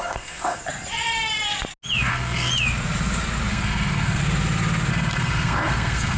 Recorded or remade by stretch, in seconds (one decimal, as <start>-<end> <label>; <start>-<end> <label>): 0.0-0.6 remade; 0.6-2.1 recorded; 2.1-2.5 remade; 2.5-3.5 recorded; 3.5-4.2 remade; 4.2-4.9 recorded; 4.9-6.2 remade